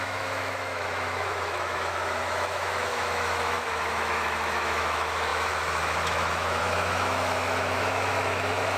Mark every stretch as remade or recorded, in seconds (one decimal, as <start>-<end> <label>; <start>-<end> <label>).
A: 0.0-8.8 remade